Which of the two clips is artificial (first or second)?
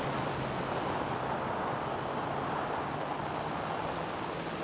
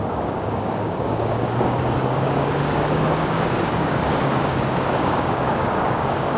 second